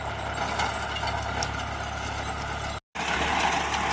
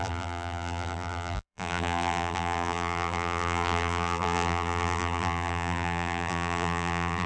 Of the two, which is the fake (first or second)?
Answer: second